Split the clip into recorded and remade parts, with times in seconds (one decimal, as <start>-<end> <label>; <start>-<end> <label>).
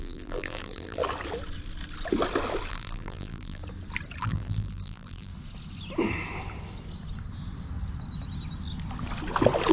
0.0-1.0 remade; 1.0-2.7 recorded; 2.7-3.6 remade; 3.6-4.2 recorded; 4.2-5.3 remade; 5.3-9.7 recorded